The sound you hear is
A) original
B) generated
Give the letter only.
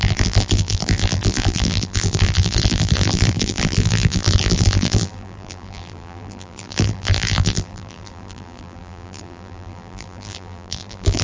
B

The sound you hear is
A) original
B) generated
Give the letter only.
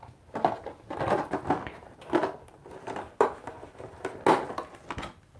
A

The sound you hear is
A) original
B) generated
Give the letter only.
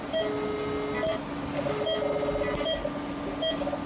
A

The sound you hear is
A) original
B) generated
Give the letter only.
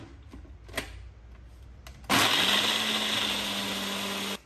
A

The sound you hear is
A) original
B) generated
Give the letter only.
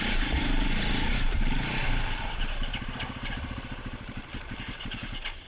B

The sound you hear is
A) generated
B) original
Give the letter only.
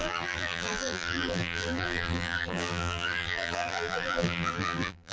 A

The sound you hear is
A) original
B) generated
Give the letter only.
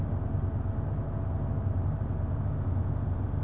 A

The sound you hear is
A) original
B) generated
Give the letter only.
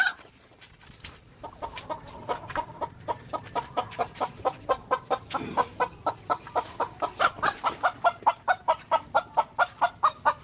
B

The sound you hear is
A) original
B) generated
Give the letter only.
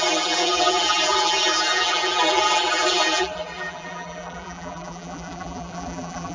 B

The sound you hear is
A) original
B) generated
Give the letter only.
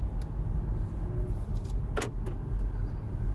A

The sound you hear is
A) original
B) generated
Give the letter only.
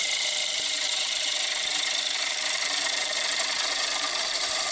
B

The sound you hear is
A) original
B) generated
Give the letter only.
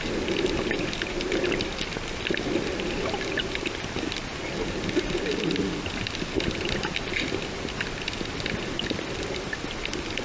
A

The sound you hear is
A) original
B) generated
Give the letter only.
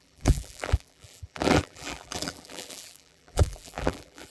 B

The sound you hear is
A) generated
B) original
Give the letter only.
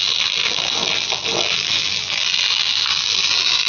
A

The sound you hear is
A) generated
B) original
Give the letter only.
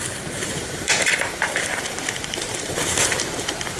A